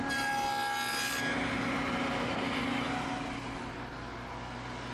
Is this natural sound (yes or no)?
yes